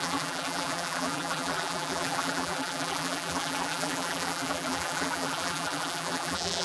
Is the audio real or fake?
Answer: fake